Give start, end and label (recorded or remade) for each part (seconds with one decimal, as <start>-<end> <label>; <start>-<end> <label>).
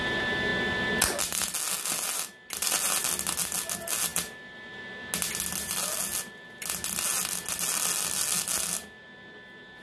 0.0-9.8 recorded